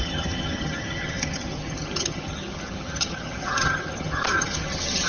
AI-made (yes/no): yes